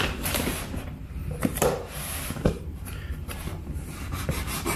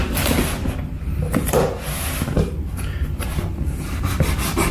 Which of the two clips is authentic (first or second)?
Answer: second